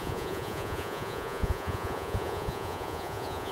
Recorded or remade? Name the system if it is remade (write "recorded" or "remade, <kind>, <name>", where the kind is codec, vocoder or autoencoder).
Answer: remade, vocoder, Vocos